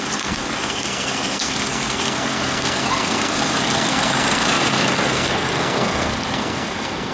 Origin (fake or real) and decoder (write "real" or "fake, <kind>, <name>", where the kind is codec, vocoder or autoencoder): fake, codec, SNAC